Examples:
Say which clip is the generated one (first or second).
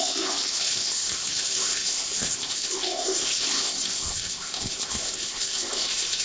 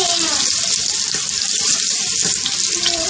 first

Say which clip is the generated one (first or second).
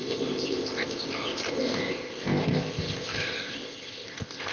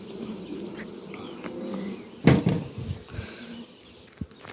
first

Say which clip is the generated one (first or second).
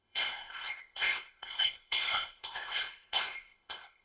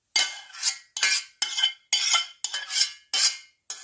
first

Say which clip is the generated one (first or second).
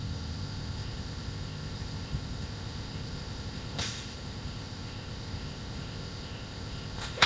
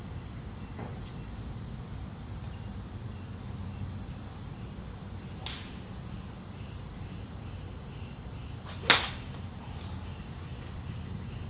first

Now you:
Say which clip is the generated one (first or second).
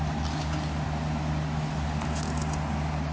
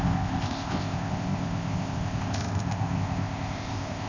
second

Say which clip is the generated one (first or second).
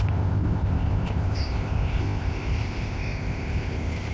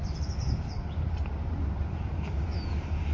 first